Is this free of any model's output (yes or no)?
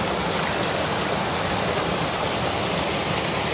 yes